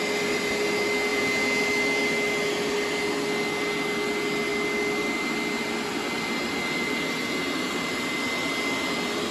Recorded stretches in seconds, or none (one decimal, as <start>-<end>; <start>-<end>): 0.0-1.1; 1.6-9.3